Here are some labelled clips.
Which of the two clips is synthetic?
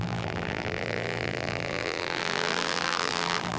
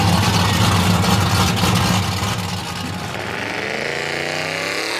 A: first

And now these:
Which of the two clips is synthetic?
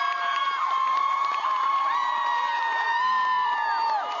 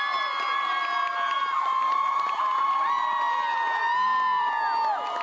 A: first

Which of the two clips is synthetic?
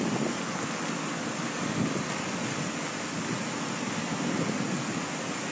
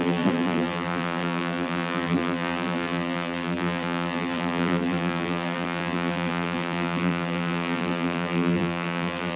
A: second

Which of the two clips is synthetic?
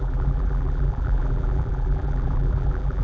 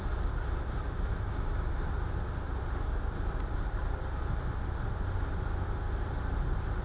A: first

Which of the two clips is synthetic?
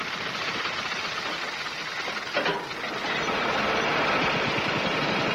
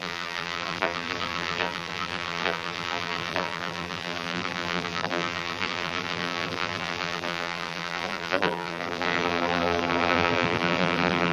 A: second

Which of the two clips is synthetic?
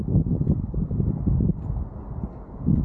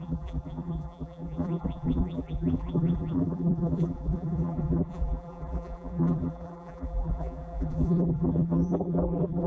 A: second